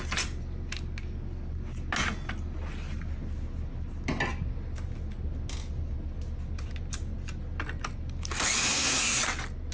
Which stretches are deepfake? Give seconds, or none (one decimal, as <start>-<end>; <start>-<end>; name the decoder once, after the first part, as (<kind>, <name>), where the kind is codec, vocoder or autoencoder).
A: 8.6-9.2 (codec, SNAC)